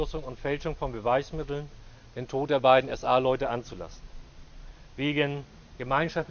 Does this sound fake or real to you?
real